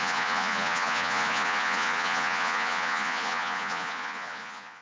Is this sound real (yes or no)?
no